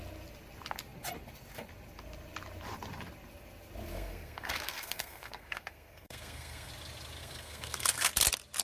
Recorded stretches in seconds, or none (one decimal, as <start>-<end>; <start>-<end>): 0.0-3.9; 6.7-7.2; 8.1-8.6